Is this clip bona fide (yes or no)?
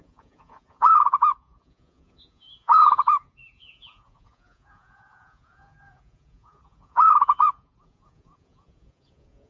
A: no